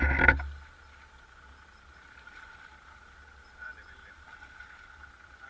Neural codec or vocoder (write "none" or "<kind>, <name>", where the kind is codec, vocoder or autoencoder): none